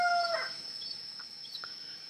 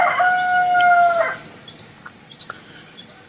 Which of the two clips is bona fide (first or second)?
second